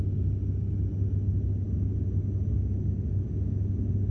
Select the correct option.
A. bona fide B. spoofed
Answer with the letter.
A